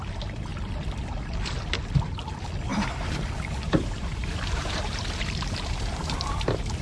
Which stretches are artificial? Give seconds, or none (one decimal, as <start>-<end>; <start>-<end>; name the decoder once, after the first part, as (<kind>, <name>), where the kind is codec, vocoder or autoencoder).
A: 2.7-6.8 (vocoder, BigVGAN v2)